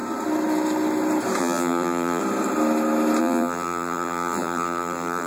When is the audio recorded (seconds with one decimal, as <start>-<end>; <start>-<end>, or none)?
0.0-1.4; 2.2-3.2